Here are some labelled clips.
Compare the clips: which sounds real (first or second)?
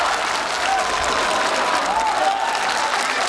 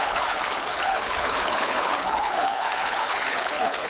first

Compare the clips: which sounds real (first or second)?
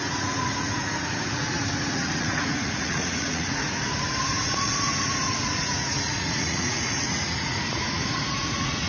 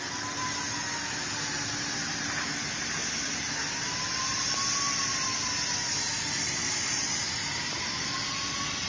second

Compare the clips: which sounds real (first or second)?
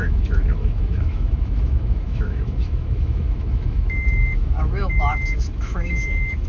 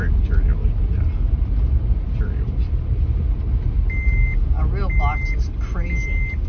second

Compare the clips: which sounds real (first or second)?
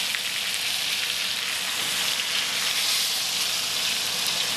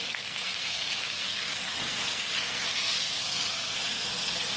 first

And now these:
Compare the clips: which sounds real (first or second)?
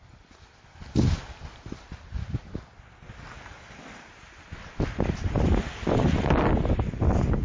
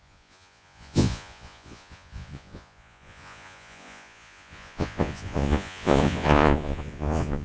first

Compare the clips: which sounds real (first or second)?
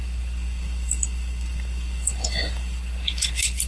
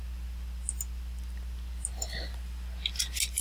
second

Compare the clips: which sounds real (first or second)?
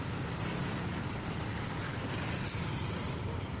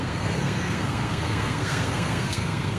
first